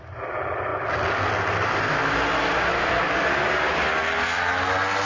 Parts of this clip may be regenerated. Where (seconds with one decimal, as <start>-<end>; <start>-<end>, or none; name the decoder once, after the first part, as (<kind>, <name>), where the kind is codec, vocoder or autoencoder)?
none

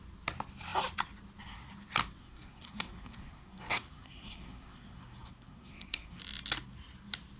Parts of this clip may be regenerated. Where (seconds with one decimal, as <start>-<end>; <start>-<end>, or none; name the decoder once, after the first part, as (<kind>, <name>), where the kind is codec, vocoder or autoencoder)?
2.2-6.2 (codec, SNAC)

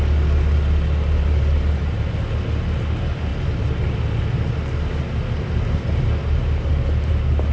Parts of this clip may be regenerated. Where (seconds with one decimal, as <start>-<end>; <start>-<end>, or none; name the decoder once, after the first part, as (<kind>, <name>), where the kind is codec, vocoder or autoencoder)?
none

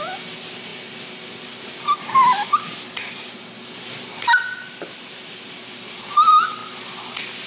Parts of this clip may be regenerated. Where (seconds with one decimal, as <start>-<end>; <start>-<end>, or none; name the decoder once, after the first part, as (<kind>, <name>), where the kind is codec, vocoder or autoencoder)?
none

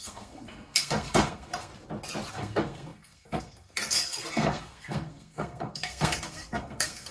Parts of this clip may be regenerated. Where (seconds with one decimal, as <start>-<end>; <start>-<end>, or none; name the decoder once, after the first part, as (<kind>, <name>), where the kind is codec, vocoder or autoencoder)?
0.0-1.7 (codec, SNAC); 2.3-7.1

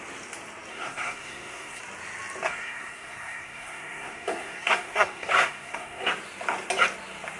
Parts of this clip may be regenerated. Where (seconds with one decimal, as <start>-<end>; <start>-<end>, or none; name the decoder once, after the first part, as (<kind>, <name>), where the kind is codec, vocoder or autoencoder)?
0.7-1.8 (codec, SNAC); 2.5-6.1

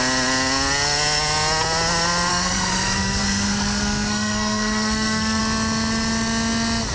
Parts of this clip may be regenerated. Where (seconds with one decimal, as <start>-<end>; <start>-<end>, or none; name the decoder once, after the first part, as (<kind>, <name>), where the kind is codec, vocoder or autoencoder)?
2.3-5.4 (codec, SNAC)

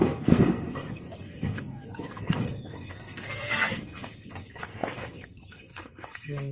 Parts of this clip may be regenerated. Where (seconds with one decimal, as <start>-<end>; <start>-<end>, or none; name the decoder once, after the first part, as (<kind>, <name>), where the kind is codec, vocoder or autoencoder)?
0.0-6.5 (codec, SNAC)